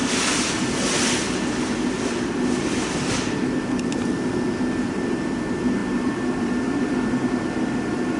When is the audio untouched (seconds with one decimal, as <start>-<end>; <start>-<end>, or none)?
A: 0.0-8.2